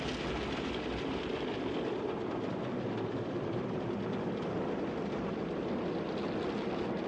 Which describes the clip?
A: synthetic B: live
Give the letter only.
B